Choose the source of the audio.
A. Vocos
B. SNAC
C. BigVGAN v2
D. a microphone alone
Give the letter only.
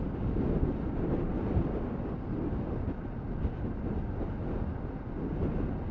D